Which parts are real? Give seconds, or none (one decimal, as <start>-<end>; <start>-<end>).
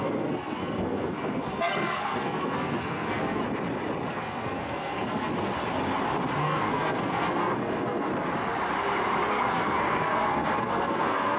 3.4-4.1; 5.3-6.4; 8.1-9.3